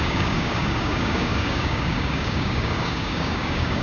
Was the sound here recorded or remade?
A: remade